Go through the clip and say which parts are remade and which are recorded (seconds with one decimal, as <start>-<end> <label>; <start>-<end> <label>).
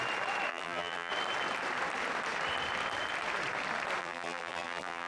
0.0-0.5 recorded; 0.5-1.1 remade; 1.1-4.0 recorded; 4.0-5.1 remade